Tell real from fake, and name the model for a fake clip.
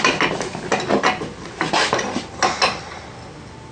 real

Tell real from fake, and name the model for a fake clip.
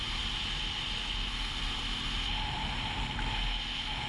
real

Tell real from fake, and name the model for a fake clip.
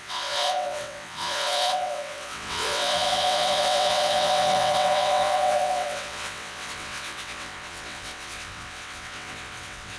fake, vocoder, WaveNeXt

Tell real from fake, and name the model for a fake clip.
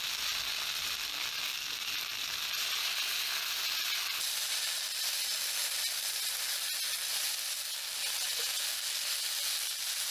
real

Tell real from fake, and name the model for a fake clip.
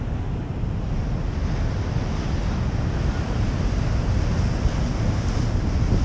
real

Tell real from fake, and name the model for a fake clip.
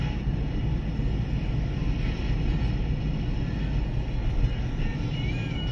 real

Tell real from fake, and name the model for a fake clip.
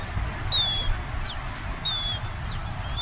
real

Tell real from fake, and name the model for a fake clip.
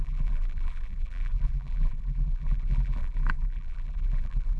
fake, vocoder, BigVGAN v2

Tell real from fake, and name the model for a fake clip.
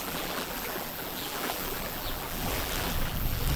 fake, vocoder, BigVGAN v2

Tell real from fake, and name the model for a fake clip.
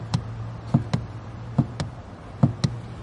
real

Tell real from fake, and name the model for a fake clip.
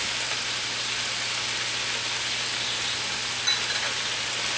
real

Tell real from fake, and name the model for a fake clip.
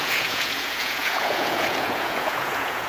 fake, vocoder, Vocos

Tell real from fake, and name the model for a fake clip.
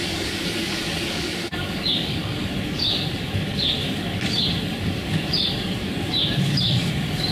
fake, codec, DAC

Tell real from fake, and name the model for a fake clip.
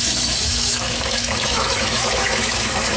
fake, autoencoder, DAC-VAE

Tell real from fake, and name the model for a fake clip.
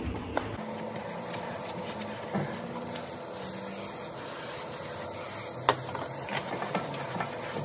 real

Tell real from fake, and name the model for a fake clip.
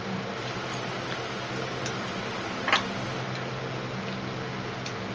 real